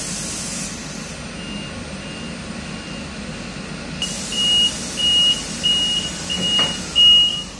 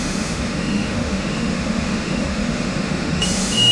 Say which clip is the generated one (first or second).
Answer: second